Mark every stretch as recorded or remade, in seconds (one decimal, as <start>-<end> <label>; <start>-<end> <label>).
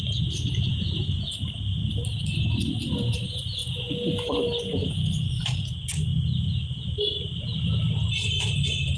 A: 0.0-9.0 recorded